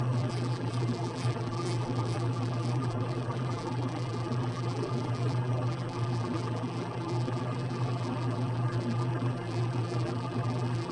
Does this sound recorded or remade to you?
remade